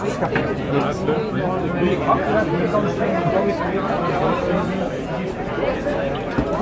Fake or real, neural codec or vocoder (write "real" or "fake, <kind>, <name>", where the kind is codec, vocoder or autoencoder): real